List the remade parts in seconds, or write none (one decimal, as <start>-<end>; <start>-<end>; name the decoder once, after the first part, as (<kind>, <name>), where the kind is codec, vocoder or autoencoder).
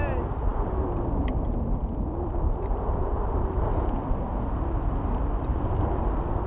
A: none